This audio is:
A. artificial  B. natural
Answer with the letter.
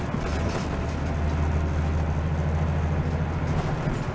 B